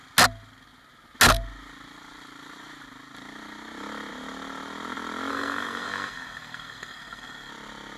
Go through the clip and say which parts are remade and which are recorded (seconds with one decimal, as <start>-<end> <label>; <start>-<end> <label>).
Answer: 0.0-5.3 recorded; 5.3-7.5 remade; 7.5-8.0 recorded